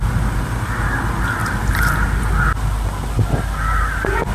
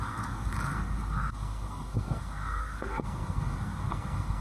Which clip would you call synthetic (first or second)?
second